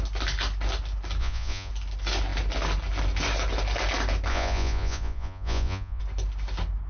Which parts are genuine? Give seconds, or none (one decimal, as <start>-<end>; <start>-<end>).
0.0-1.2; 1.7-4.3; 6.0-6.9

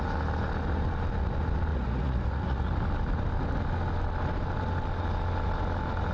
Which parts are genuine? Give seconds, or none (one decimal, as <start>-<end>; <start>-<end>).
0.0-1.7; 2.7-6.1